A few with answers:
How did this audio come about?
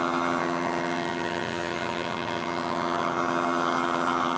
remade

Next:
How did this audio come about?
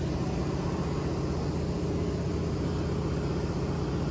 recorded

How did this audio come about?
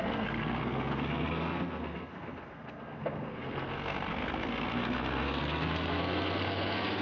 remade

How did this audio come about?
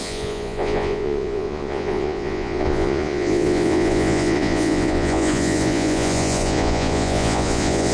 remade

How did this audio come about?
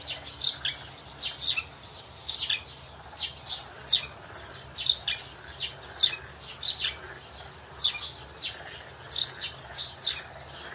recorded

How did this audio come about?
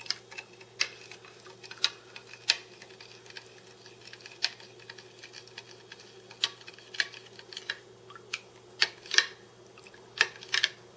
recorded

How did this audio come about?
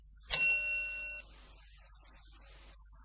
recorded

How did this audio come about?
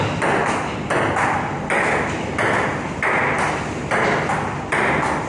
recorded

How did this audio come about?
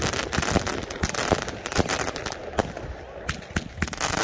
recorded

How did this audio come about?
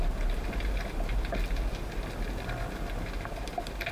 recorded